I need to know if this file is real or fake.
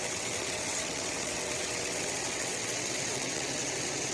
fake